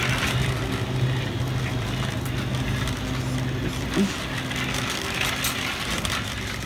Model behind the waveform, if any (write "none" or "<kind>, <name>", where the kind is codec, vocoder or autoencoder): none